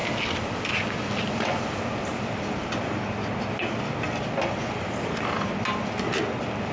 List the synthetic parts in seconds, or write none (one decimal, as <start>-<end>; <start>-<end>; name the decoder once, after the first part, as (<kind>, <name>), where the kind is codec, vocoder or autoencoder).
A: none

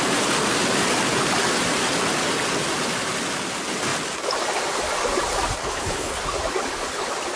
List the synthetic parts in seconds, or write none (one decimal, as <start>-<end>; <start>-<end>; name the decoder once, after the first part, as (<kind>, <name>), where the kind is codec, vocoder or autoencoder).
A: 5.6-6.2 (codec, HILCodec)